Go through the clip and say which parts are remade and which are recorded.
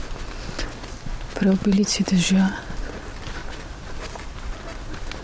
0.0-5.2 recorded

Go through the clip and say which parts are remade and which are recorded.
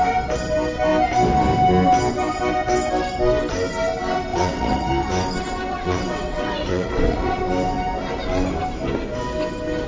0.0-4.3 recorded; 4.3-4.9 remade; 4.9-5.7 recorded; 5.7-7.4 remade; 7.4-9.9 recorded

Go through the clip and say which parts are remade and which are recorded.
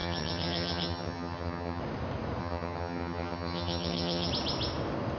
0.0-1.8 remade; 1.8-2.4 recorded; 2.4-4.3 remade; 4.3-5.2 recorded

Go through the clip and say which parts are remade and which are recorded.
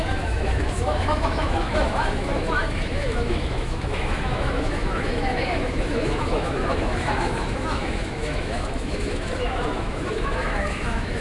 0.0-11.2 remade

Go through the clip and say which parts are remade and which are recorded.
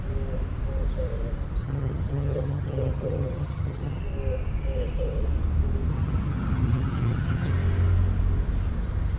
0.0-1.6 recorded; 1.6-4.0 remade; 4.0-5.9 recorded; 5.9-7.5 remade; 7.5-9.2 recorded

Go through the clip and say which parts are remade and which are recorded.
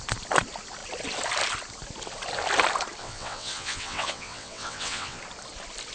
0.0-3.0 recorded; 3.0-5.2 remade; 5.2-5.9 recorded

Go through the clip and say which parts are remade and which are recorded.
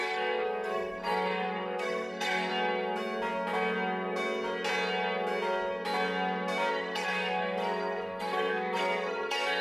0.0-2.5 remade; 2.5-6.7 recorded; 6.7-9.6 remade